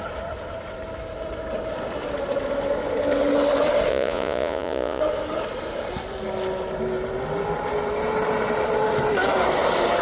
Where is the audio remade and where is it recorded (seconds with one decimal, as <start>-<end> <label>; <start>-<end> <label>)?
0.0-3.9 recorded; 3.9-5.0 remade; 5.0-10.0 recorded